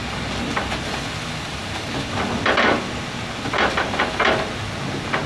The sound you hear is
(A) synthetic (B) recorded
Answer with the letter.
B